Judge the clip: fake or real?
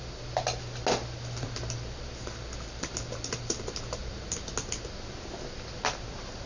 real